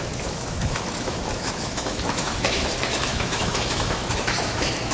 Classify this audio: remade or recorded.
remade